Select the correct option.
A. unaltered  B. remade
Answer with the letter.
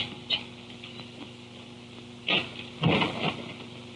A